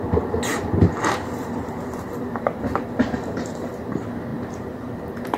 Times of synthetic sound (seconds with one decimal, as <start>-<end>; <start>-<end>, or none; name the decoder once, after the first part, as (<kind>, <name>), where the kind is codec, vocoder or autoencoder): 0.5-3.7 (vocoder, BigVGAN v2); 4.3-4.9